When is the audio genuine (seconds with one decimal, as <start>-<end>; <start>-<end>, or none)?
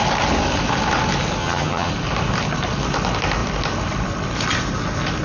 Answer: 0.0-1.4; 1.9-5.2